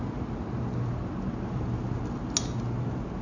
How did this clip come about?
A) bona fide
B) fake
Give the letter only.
A